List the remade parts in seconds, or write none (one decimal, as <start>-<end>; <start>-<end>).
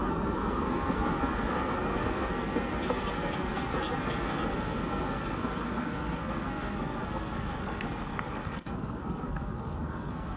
0.0-10.4